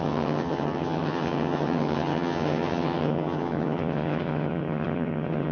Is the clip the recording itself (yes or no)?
no